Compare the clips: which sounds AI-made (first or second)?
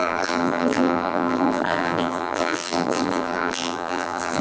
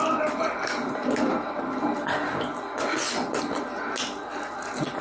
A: first